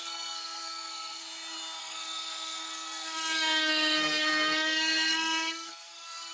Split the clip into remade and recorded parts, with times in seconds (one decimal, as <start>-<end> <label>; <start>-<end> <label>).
0.0-1.2 remade; 1.2-1.8 recorded; 1.8-6.3 remade